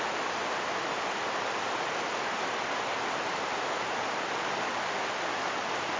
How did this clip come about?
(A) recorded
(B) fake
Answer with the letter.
A